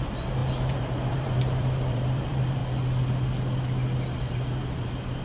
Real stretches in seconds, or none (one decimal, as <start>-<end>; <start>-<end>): 2.6-4.2